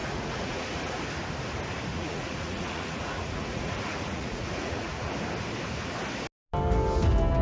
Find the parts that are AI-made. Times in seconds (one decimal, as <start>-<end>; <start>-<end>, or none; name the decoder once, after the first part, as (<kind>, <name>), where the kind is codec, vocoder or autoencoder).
0.0-1.0 (vocoder, Vocos); 1.9-5.1